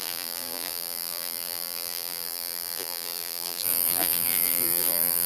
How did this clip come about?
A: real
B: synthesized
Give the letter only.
B